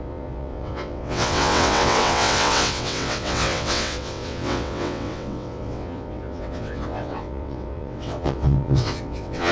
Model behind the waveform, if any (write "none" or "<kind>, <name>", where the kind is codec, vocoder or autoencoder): vocoder, WaveNeXt